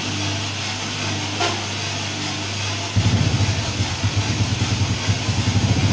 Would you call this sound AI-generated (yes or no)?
no